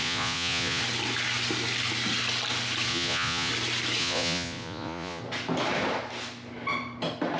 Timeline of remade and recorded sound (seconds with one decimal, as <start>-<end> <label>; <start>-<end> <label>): 0.0-0.8 remade; 0.8-2.9 recorded; 2.9-3.5 remade; 3.5-4.0 recorded; 4.0-5.2 remade; 5.2-7.4 recorded